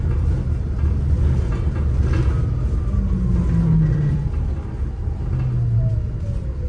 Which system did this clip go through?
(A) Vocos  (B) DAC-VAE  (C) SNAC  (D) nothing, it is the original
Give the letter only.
D